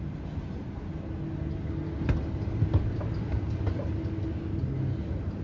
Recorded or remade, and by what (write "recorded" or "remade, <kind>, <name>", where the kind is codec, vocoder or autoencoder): recorded